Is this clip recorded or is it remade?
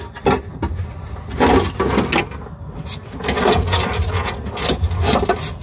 recorded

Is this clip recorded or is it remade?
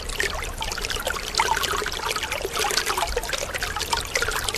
recorded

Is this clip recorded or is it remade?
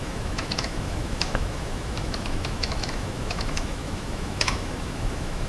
remade